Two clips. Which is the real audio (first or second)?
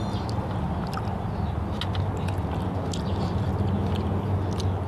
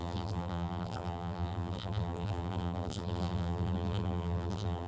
first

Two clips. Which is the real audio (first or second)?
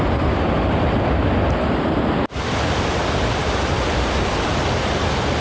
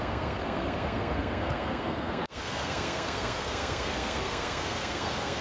first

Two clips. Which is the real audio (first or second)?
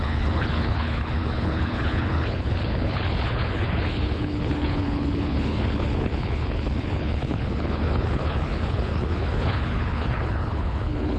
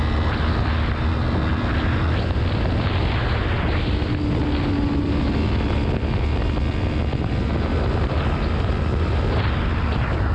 second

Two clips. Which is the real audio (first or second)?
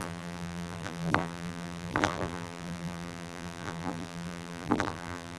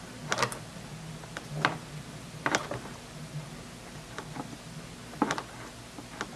second